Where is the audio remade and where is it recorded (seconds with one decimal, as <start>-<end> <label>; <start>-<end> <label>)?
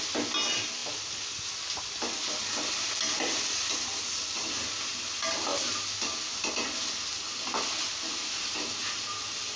0.0-9.6 recorded